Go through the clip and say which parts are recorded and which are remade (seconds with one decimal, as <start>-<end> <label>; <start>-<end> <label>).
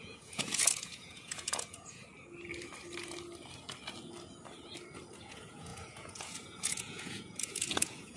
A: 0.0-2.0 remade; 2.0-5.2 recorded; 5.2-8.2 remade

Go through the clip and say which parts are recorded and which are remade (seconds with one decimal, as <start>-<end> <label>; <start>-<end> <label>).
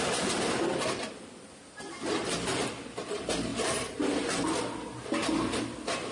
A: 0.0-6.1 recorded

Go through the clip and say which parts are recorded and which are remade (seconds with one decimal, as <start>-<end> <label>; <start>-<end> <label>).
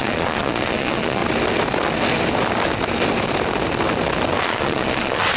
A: 0.0-1.2 remade; 1.2-4.4 recorded; 4.4-5.4 remade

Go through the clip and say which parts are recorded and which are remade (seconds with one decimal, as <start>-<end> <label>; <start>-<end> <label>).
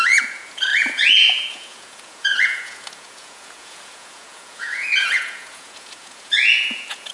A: 0.0-7.1 remade